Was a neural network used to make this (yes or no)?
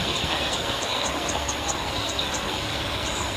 yes